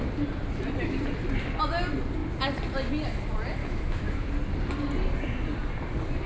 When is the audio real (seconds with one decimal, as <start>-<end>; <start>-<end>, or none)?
0.0-3.6; 4.3-6.3